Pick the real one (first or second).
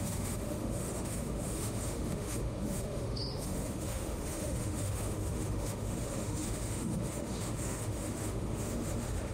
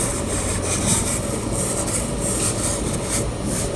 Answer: second